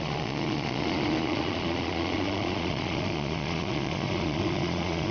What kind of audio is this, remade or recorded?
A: remade